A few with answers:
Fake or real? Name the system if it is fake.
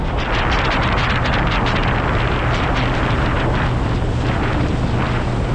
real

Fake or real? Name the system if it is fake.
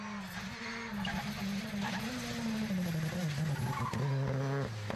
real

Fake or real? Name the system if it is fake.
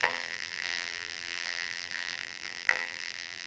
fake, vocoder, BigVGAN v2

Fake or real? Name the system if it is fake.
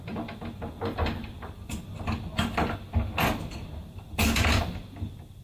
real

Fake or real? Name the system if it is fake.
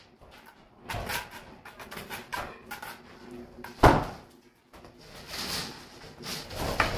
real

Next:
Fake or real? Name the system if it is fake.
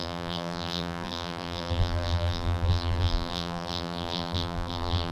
fake, vocoder, BigVGAN v2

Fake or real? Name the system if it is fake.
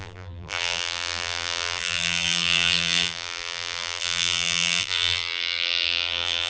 fake, vocoder, BigVGAN v2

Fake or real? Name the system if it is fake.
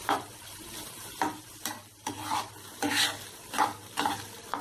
fake, vocoder, BigVGAN v2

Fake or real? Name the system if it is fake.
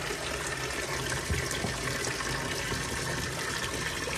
real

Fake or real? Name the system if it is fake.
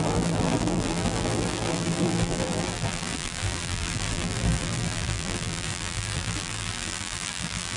fake, vocoder, BigVGAN v2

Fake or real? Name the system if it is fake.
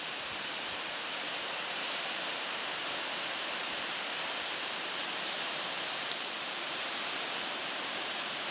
fake, vocoder, BigVGAN v2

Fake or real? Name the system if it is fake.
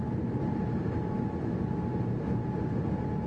real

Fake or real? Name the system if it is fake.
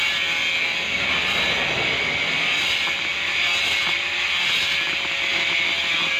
real